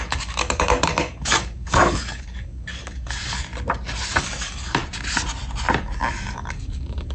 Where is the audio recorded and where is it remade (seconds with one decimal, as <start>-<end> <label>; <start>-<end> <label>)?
0.0-3.5 remade; 3.5-4.2 recorded; 4.2-4.8 remade; 4.8-5.8 recorded; 5.8-7.1 remade